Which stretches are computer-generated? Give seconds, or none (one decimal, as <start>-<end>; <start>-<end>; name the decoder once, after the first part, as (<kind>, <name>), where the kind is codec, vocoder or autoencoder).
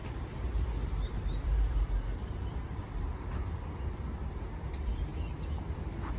0.0-5.1 (vocoder, BigVGAN v2); 5.6-6.2